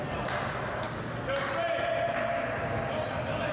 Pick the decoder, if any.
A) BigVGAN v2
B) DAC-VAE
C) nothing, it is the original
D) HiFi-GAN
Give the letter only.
C